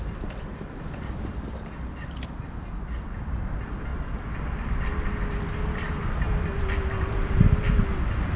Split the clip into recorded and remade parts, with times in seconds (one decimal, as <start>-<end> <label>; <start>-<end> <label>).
0.0-0.5 recorded; 0.5-2.7 remade; 2.7-8.4 recorded